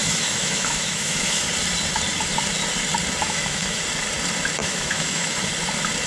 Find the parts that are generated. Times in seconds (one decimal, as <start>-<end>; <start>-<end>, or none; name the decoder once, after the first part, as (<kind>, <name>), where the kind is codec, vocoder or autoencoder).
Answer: 0.0-1.5 (autoencoder, DAC-VAE); 3.2-3.8; 4.6-5.5